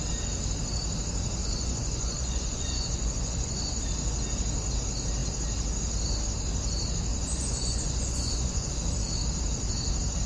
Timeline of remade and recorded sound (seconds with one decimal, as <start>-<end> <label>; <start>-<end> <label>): 0.0-1.4 recorded; 1.4-3.8 remade; 3.8-7.1 recorded; 7.1-8.7 remade; 8.7-10.3 recorded